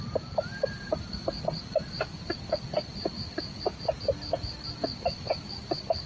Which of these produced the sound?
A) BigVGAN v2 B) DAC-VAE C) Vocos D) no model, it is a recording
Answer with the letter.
D